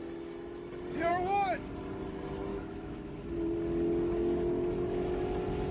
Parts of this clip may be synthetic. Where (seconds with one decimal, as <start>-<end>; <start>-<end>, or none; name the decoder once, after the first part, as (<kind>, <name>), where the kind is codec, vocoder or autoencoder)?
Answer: 1.1-1.6 (autoencoder, DAC-VAE); 2.5-3.1